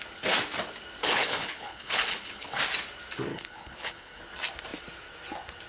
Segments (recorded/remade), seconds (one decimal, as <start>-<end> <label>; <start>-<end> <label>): 0.0-1.0 recorded; 1.0-2.6 remade; 2.6-3.3 recorded; 3.3-4.2 remade; 4.2-5.7 recorded